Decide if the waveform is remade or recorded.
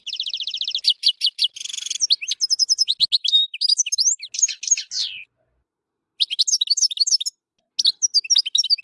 recorded